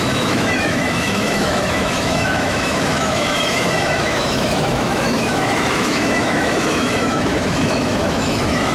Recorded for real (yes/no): no